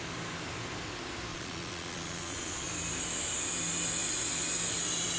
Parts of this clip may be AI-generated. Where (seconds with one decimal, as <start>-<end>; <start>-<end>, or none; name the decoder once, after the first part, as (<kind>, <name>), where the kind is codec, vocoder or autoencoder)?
1.3-2.7 (vocoder, Vocos)